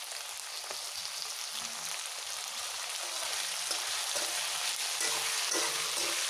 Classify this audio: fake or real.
real